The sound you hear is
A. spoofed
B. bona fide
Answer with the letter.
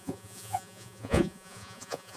A